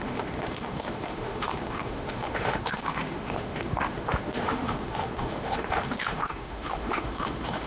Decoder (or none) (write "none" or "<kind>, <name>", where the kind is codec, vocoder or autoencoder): autoencoder, DAC-VAE